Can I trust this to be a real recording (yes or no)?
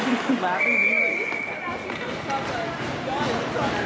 yes